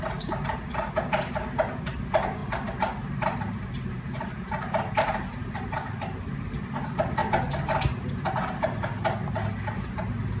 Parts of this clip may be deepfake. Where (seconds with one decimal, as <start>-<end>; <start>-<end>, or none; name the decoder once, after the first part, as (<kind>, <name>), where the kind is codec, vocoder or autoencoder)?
none